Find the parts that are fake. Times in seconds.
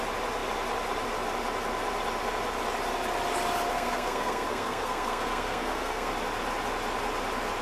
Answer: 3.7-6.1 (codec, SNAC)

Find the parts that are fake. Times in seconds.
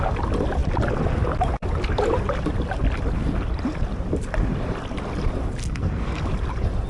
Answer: 5.6-6.2 (codec, SNAC)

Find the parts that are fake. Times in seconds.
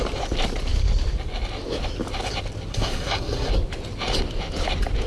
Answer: 2.7-3.5 (codec, SNAC)